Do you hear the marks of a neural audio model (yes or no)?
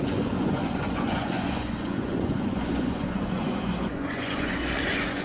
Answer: yes